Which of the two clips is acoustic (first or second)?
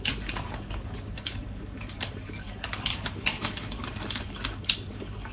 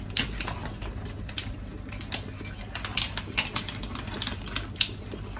second